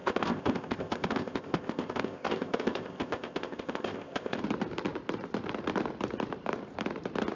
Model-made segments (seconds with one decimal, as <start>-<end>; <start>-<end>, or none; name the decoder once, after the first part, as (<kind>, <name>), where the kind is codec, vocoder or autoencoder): 0.0-4.4 (codec, ZipCodec)